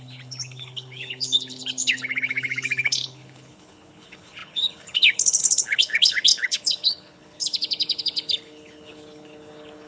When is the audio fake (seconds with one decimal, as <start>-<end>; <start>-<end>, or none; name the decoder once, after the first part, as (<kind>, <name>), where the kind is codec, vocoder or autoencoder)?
0.0-9.9 (codec, HILCodec)

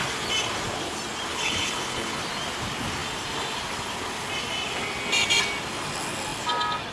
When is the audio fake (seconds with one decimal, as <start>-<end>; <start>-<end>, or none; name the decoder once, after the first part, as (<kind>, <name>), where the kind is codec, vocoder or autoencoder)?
1.3-2.2 (codec, HILCodec)

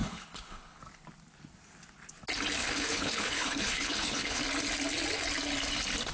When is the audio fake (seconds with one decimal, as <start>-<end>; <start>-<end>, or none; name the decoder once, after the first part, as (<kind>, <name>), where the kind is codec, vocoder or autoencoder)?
0.0-0.8 (codec, HILCodec); 2.6-4.4

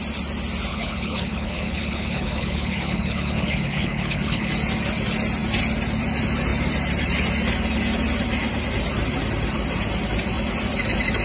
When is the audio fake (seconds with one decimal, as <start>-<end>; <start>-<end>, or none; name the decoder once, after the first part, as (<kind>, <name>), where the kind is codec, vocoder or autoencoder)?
0.7-4.5 (codec, HILCodec)

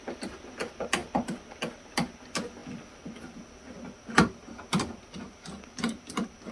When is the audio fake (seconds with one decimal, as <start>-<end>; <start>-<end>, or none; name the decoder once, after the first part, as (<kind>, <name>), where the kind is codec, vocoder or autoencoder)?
none

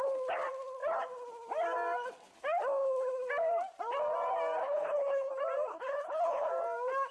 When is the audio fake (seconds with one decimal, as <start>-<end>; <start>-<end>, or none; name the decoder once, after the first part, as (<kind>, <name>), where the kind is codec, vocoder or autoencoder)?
4.6-5.3 (codec, HILCodec); 5.7-6.5

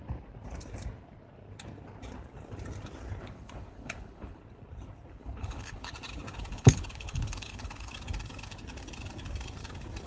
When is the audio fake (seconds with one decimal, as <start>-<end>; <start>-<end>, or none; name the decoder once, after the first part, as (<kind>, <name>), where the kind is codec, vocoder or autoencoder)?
3.2-4.4 (codec, HILCodec); 5.2-5.9; 6.5-7.9

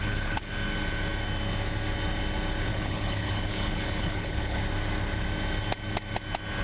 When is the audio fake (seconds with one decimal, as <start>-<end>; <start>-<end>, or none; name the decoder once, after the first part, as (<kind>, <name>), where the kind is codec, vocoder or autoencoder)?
0.0-0.5 (codec, HILCodec); 2.7-4.6